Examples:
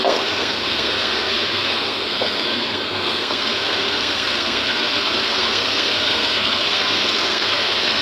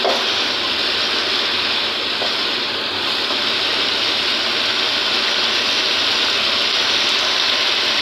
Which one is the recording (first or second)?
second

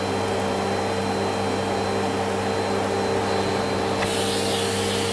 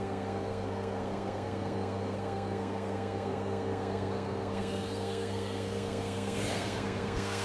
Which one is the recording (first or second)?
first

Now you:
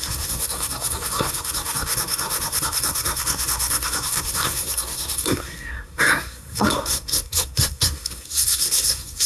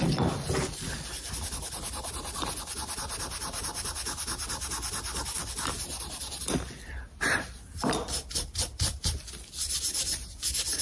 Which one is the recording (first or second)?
second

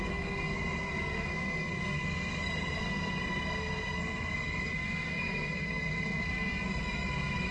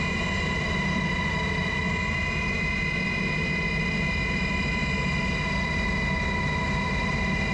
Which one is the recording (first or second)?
second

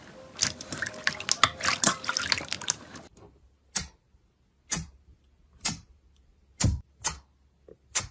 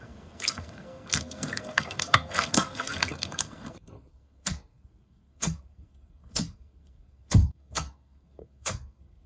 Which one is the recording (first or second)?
first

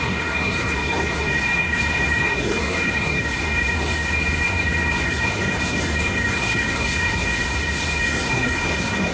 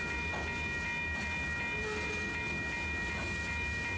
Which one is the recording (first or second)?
second